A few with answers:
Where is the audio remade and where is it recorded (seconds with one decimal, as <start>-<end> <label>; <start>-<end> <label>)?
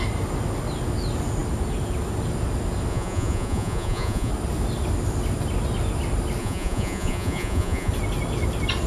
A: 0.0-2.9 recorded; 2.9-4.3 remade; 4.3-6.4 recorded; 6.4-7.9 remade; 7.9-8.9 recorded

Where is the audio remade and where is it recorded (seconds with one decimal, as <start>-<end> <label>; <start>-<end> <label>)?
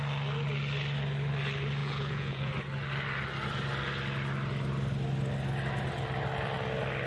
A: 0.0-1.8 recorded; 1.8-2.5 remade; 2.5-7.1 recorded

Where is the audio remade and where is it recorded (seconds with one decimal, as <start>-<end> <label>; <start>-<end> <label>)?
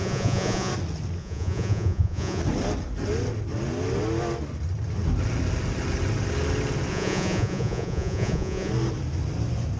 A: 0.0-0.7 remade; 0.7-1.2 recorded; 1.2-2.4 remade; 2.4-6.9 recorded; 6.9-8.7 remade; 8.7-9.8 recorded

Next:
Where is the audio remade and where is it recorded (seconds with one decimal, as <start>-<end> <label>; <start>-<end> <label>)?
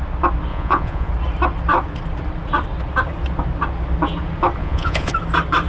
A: 0.0-0.5 recorded; 0.5-1.1 remade; 1.1-4.6 recorded; 4.6-5.1 remade; 5.1-5.7 recorded